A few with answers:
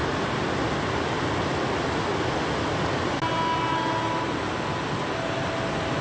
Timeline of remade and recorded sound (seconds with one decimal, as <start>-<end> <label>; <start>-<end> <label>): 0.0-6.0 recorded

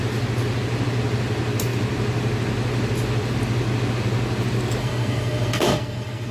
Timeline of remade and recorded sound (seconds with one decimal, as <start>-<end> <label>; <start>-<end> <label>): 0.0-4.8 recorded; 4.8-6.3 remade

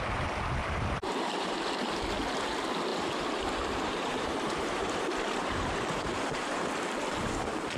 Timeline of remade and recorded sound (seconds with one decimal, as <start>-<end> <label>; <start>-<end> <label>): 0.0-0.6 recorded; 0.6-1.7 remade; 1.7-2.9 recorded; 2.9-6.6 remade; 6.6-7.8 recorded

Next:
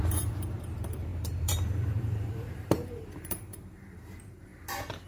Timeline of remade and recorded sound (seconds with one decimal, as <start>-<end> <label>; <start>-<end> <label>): 0.0-4.5 remade; 4.5-5.1 recorded

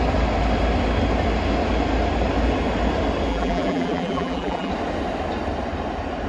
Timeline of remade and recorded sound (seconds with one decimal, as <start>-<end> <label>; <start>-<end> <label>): 0.0-3.3 recorded; 3.3-4.7 remade; 4.7-6.3 recorded